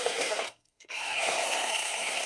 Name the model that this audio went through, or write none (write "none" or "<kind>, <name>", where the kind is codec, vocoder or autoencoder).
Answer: codec, SNAC